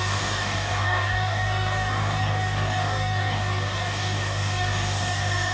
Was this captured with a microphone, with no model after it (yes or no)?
no